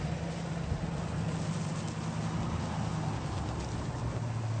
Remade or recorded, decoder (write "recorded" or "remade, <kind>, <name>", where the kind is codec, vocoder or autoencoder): recorded